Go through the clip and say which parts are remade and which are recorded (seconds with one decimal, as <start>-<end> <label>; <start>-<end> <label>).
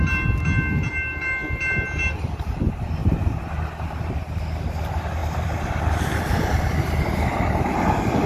0.0-8.3 recorded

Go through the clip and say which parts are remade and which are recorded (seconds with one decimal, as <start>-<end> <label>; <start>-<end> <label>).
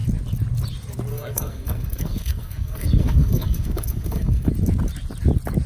0.0-1.1 recorded; 1.1-4.5 remade; 4.5-5.7 recorded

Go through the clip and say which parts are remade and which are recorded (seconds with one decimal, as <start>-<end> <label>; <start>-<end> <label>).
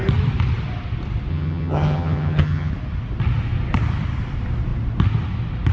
0.0-1.3 recorded; 1.3-2.7 remade; 2.7-5.7 recorded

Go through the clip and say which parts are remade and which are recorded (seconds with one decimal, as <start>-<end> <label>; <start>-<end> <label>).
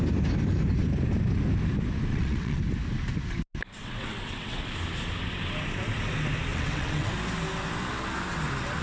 0.0-2.1 recorded; 2.1-2.6 remade; 2.6-3.8 recorded; 3.8-4.6 remade; 4.6-6.5 recorded; 6.5-7.1 remade; 7.1-8.8 recorded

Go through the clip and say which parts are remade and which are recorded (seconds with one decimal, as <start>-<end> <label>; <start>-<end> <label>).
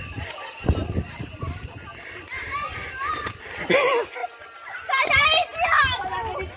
0.0-6.6 recorded